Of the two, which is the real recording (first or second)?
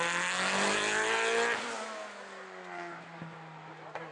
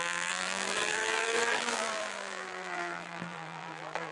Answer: first